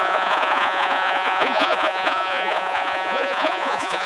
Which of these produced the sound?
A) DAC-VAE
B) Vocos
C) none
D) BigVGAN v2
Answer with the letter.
B